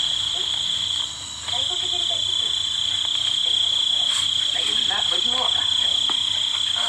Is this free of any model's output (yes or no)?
yes